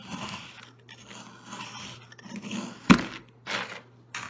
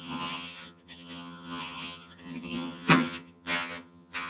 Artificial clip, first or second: second